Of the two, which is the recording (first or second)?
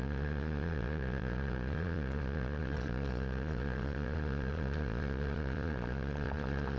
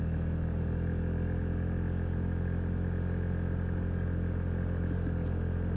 second